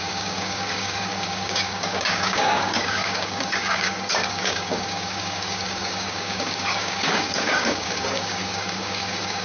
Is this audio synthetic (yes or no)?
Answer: yes